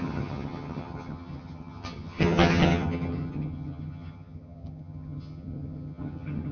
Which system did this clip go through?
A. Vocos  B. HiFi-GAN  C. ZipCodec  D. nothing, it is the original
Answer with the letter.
B